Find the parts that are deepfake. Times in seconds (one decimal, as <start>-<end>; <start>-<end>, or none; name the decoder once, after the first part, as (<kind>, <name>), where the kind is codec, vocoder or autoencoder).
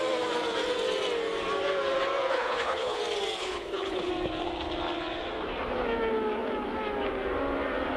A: 2.3-3.0 (codec, HILCodec); 3.4-4.1